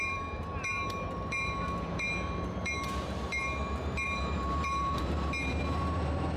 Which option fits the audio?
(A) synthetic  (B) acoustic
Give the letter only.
A